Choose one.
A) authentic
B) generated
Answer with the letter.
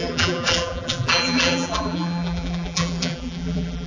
B